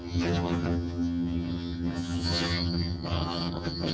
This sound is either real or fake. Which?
fake